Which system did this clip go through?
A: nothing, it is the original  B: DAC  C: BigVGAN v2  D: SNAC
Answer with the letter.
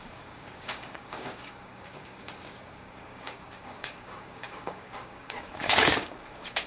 B